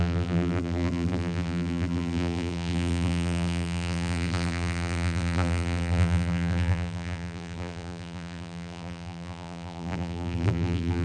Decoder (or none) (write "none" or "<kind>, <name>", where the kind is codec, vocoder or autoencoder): vocoder, BigVGAN v2